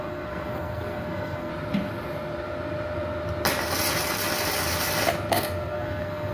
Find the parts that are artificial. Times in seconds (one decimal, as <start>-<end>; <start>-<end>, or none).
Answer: 0.0-1.5; 5.3-6.3